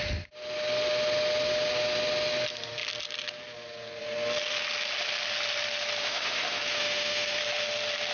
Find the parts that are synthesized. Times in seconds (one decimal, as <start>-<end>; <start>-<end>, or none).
6.0-7.4